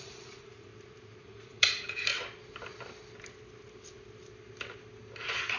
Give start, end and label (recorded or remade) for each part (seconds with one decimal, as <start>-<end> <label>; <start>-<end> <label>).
0.0-0.7 remade; 0.7-1.2 recorded; 1.2-2.1 remade; 2.1-5.6 recorded